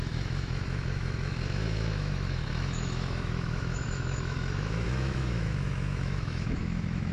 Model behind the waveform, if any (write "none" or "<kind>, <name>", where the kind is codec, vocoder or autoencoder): autoencoder, DAC-VAE